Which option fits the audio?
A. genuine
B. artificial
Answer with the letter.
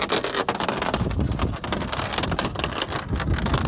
A